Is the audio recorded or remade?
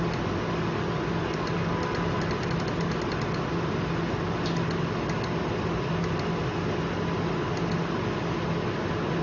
recorded